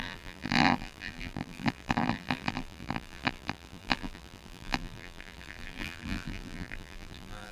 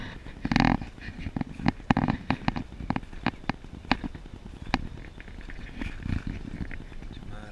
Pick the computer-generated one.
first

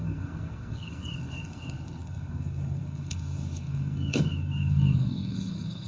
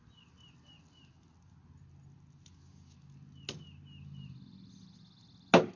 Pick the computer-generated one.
first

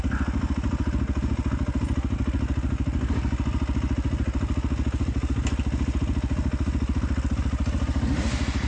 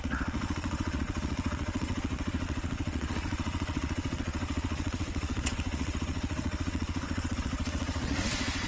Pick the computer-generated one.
second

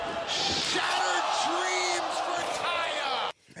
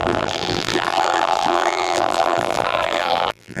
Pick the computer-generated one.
second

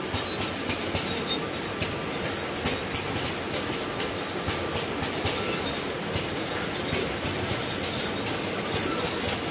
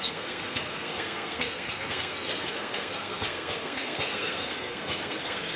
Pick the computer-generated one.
second